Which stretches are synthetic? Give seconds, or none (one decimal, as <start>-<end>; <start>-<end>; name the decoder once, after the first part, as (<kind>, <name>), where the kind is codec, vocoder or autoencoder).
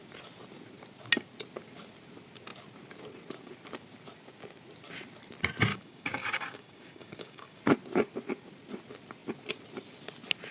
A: 5.7-7.6 (codec, DAC)